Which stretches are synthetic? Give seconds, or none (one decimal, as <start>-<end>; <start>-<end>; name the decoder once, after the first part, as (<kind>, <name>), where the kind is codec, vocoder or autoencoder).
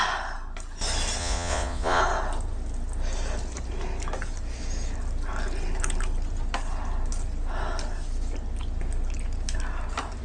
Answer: 1.2-2.0 (vocoder, Vocos)